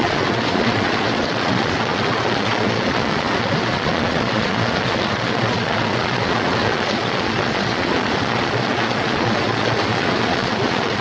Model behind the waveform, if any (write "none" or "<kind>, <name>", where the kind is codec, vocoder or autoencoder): vocoder, Vocos